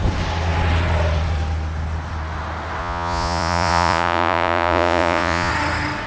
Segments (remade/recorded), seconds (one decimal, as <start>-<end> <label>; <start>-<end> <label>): 0.0-2.8 recorded; 2.8-5.5 remade; 5.5-6.1 recorded